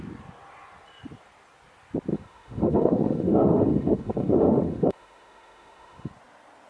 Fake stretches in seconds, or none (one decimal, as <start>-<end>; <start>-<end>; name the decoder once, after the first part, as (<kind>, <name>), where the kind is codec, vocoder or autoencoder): 2.1-6.1 (autoencoder, DAC-VAE)